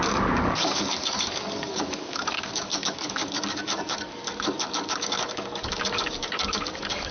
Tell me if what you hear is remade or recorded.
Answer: remade